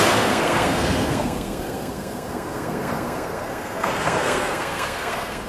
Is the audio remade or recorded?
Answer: remade